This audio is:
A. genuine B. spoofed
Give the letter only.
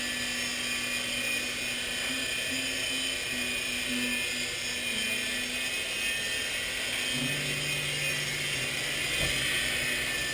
A